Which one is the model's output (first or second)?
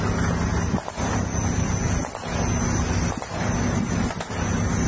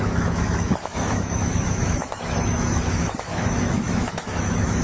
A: second